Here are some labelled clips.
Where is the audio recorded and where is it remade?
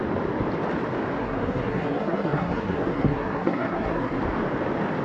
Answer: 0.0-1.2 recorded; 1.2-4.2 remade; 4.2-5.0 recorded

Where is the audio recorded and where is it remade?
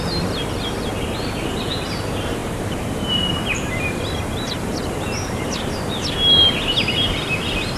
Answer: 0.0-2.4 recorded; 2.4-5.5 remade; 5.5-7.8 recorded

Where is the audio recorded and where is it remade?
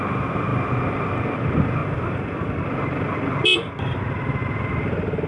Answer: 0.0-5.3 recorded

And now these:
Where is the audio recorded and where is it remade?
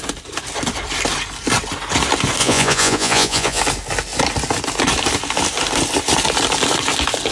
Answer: 0.0-2.4 recorded; 2.4-3.6 remade; 3.6-7.3 recorded